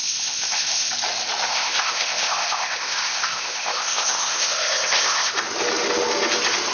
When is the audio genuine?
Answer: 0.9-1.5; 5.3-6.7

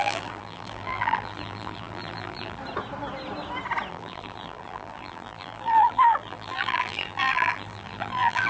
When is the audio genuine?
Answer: 2.6-3.9

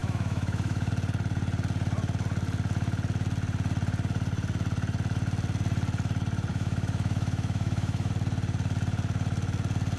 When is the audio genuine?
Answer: 0.9-6.5; 8.1-10.0

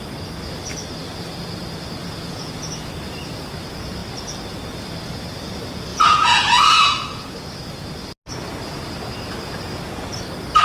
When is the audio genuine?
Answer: 0.0-2.0; 2.9-5.9; 7.3-10.6

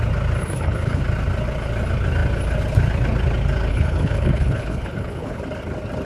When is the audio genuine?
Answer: 0.0-0.4; 1.0-3.7; 5.4-6.0